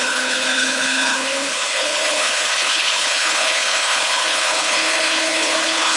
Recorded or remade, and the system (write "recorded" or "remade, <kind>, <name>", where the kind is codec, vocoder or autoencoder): remade, codec, HILCodec